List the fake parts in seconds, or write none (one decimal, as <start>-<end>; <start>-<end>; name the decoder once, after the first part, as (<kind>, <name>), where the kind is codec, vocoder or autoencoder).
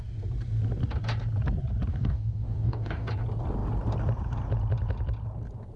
1.9-3.1 (codec, DAC)